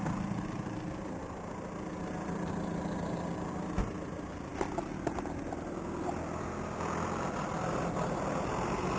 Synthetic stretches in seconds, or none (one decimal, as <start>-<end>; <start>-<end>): none